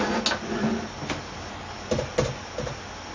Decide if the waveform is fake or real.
real